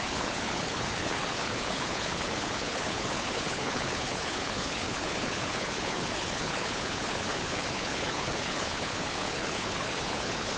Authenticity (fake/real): fake